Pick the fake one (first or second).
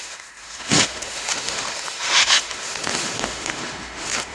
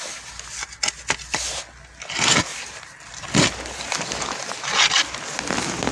first